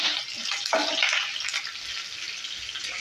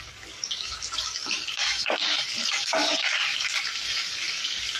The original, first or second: first